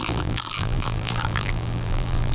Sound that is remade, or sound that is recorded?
remade